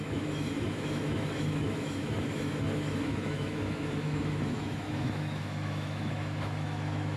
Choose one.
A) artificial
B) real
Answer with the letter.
A